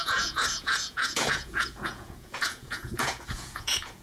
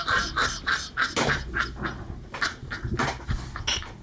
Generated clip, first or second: first